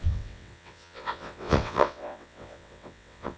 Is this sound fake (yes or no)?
yes